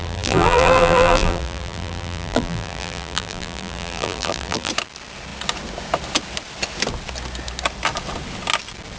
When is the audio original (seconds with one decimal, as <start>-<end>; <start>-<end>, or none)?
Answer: 4.7-9.0